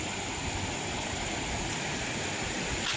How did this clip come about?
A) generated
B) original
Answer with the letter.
B